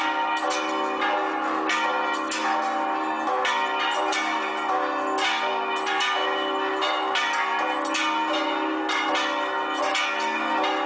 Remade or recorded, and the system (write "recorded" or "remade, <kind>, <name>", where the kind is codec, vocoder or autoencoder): recorded